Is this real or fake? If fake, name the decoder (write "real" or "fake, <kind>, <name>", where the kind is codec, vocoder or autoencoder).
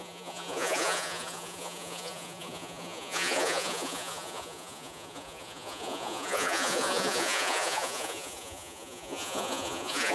fake, vocoder, Vocos